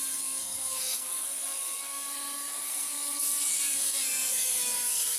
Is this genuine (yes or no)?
no